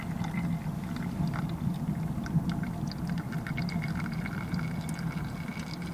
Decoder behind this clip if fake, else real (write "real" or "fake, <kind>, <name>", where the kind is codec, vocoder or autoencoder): real